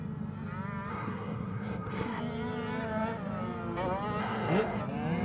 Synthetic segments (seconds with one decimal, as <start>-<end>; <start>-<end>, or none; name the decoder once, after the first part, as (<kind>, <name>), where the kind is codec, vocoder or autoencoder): 0.9-2.2 (codec, SNAC); 4.2-4.8